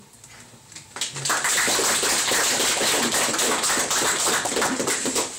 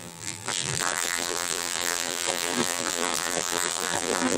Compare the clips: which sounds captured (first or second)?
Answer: first